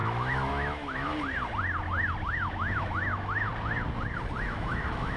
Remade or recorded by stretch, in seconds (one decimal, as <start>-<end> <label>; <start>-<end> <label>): 0.0-1.1 remade; 1.1-2.3 recorded; 2.3-3.5 remade; 3.5-4.4 recorded; 4.4-5.2 remade